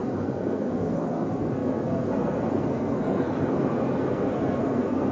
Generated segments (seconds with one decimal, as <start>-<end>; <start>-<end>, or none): 0.0-5.1